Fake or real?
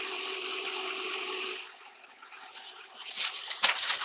fake